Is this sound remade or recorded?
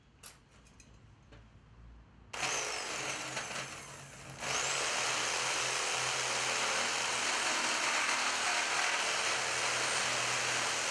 recorded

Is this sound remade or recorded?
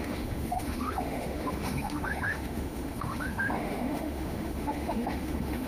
remade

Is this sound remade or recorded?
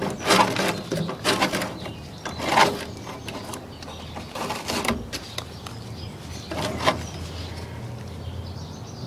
recorded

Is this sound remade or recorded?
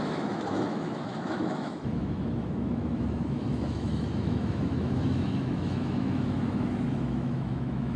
remade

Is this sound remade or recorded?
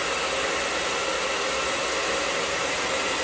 recorded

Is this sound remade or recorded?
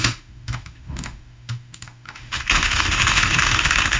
remade